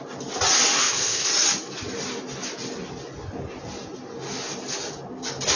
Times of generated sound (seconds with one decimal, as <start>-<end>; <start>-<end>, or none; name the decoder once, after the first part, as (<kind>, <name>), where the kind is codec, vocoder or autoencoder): 0.8-1.3 (codec, ZipCodec)